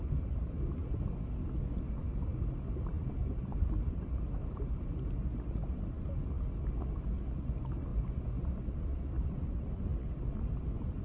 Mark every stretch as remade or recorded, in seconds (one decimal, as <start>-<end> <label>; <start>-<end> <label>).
0.0-11.0 recorded